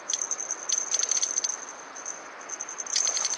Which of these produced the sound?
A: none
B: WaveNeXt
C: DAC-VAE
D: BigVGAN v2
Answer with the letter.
A